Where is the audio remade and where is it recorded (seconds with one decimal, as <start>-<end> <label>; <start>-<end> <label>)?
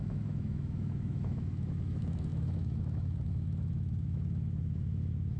0.0-5.4 remade